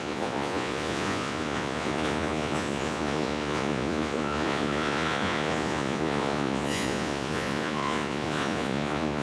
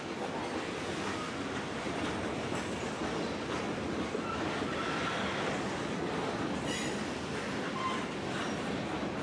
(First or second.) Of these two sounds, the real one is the second